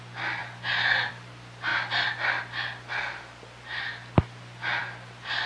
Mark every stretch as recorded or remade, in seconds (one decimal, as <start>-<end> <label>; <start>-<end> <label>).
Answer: 0.0-5.5 recorded